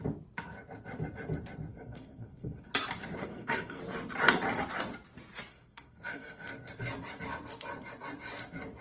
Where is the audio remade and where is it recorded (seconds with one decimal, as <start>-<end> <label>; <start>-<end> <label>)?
0.0-1.7 recorded; 1.7-2.7 remade; 2.7-3.2 recorded; 3.2-3.8 remade; 3.8-5.5 recorded; 5.5-6.7 remade; 6.7-8.8 recorded